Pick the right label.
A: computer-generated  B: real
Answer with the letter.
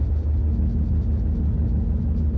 B